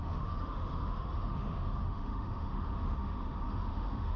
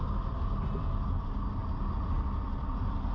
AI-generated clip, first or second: first